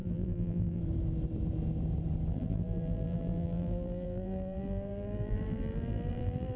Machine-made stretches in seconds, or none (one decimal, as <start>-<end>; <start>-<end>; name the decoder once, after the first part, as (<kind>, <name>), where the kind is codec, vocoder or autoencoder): 0.0-0.8 (vocoder, BigVGAN v2); 2.3-6.6